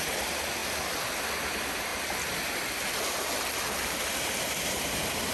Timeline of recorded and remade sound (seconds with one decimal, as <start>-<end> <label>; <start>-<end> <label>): 0.0-5.3 recorded